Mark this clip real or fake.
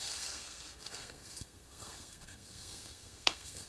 fake